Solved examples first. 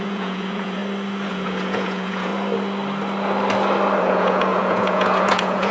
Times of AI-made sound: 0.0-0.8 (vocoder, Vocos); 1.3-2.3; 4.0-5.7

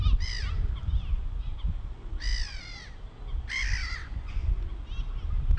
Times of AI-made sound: 1.2-1.7 (vocoder, Vocos); 3.8-4.5